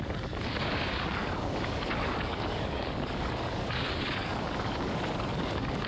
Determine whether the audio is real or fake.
fake